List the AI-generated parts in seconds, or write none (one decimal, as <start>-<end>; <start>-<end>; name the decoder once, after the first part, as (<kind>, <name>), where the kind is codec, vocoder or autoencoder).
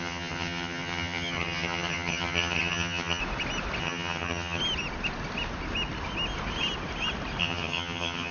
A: 0.0-3.2 (vocoder, HiFi-GAN); 3.8-4.6; 7.4-8.3